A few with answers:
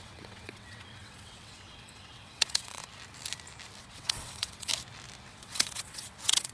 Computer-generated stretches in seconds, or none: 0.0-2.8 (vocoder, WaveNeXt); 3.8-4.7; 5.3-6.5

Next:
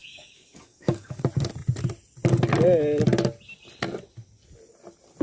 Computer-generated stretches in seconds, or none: 0.0-1.2 (codec, DAC)